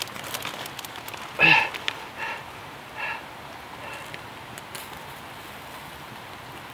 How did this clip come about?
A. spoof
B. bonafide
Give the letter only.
B